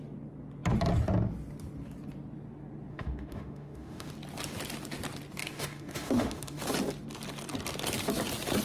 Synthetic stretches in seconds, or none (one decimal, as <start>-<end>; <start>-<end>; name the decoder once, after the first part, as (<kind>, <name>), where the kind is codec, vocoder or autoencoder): 2.9-4.1 (autoencoder, DAC-VAE); 5.4-6.6